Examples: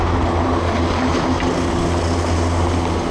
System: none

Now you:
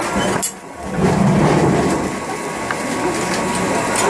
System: none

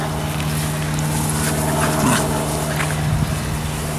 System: none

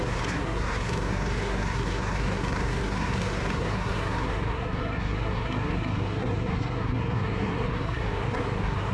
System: codec, SNAC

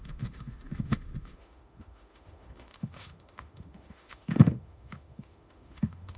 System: autoencoder, DAC-VAE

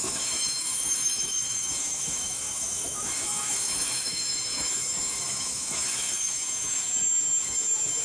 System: autoencoder, DAC-VAE